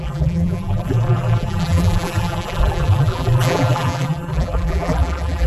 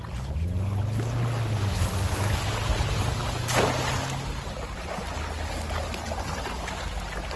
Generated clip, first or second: first